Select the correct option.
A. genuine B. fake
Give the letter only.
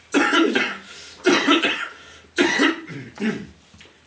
A